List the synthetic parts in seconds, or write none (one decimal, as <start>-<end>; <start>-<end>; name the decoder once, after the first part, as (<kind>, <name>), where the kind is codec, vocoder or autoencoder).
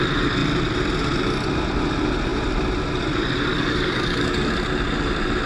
3.5-4.5 (codec, DAC)